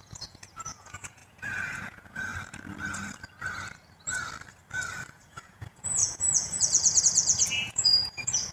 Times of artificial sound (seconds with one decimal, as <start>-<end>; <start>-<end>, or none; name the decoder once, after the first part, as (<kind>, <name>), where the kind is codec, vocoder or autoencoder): 0.0-2.3 (vocoder, Vocos); 5.1-8.5